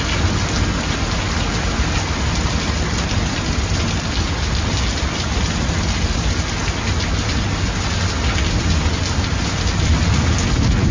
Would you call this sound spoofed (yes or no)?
no